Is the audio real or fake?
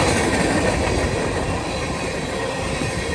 real